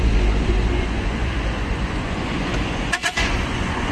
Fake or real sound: fake